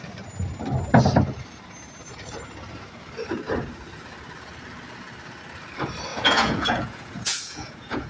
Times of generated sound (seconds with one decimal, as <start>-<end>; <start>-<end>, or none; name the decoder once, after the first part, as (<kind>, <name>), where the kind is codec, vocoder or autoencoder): 6.1-8.1 (vocoder, Vocos)